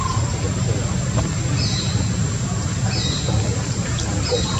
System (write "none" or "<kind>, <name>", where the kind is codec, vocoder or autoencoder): none